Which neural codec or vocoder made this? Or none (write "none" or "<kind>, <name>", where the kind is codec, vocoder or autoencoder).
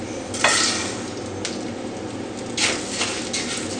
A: none